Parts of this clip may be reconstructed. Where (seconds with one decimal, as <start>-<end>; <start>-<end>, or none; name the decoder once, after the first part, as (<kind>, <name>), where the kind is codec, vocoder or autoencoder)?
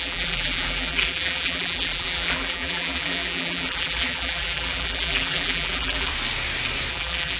0.0-6.1 (vocoder, BigVGAN v2); 6.9-7.4